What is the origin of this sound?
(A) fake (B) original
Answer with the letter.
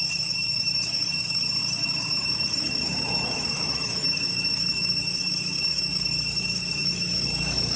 A